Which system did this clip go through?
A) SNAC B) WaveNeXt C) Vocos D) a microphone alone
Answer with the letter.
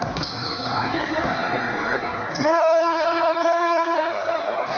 A